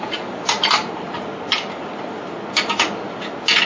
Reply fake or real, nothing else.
real